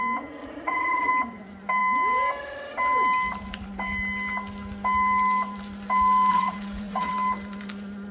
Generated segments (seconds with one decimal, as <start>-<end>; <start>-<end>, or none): 0.4-1.1; 6.3-7.1